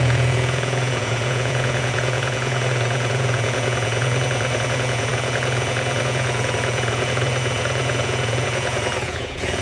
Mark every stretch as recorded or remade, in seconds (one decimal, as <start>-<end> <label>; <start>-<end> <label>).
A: 0.0-9.6 remade